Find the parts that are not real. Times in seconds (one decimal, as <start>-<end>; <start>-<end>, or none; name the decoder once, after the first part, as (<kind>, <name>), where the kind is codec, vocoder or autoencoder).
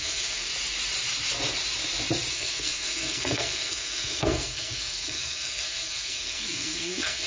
0.0-0.5 (codec, SNAC); 2.3-7.3